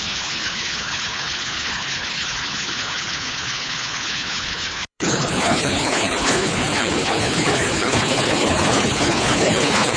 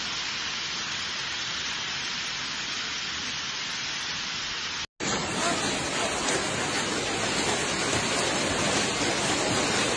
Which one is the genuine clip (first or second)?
second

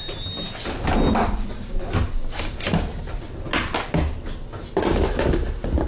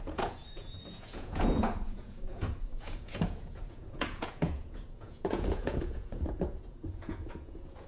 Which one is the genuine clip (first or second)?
first